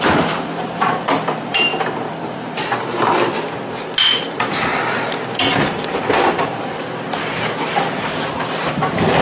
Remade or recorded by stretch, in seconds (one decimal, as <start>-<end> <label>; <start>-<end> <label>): 0.0-2.7 remade; 2.7-4.1 recorded; 4.1-9.2 remade